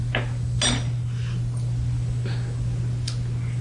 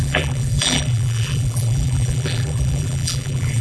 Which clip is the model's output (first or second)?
second